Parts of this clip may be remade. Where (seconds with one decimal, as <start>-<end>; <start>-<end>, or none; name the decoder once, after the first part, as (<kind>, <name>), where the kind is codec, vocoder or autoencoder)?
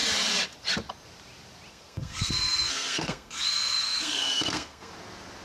1.7-4.9 (codec, SNAC)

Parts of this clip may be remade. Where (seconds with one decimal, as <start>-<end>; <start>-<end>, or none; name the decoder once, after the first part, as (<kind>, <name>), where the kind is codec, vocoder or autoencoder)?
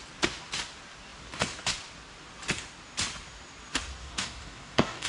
4.0-5.1 (codec, DAC)